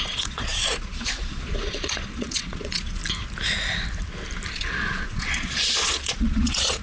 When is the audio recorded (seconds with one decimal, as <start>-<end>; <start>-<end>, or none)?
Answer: 3.0-4.5